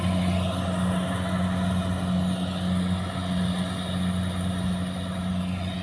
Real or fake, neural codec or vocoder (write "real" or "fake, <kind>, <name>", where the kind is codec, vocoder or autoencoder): real